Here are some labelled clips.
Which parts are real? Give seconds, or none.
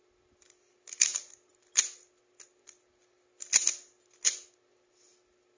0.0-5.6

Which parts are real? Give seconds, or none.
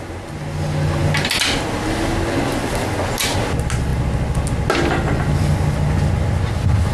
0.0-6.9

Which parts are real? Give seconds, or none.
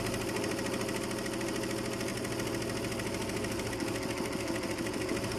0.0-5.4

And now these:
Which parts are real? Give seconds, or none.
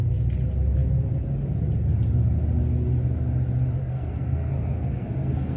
0.0-3.8